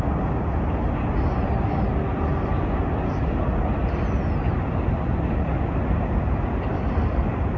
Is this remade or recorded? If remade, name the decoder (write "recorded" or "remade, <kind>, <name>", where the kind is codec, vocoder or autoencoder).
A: recorded